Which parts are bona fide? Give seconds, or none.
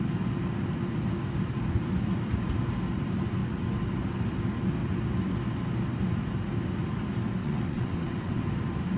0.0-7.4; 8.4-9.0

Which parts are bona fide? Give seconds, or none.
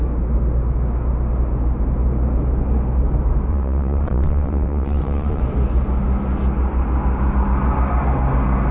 0.0-3.5; 5.4-8.7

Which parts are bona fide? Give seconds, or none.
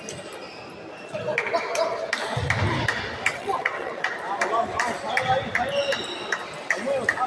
0.0-3.3; 4.1-7.3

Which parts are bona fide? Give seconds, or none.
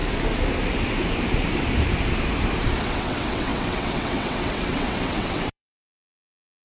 0.0-2.8